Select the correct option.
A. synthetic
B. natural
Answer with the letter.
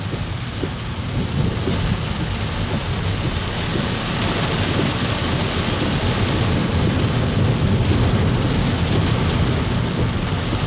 B